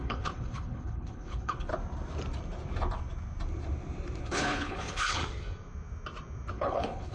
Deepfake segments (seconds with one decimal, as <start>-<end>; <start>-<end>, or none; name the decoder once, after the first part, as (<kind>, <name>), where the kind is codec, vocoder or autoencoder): 0.0-1.7 (codec, HILCodec); 4.2-5.2; 6.5-7.1